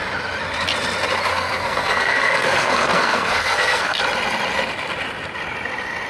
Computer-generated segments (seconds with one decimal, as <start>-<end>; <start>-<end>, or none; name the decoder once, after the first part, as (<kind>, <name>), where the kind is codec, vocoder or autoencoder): 1.3-4.0 (codec, SNAC)